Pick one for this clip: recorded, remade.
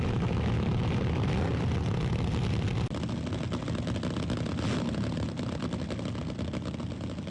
recorded